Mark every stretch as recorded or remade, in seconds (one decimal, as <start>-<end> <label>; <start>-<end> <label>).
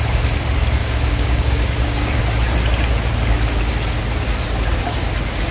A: 0.0-0.8 recorded; 0.8-2.2 remade; 2.2-5.5 recorded